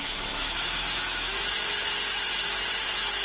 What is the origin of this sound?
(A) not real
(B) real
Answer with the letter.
A